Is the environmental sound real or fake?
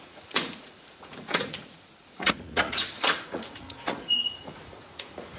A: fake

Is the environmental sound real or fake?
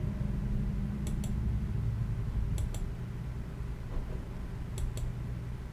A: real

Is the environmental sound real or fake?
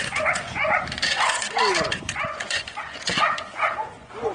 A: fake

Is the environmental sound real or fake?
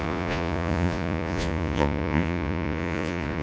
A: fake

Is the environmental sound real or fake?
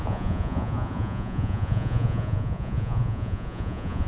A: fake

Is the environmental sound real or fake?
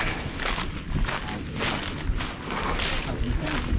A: real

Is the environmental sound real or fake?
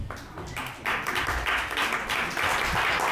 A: real